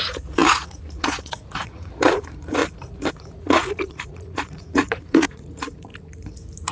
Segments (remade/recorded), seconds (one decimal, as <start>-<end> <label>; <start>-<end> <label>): 0.0-2.6 remade; 2.6-3.1 recorded; 3.1-5.9 remade; 5.9-6.7 recorded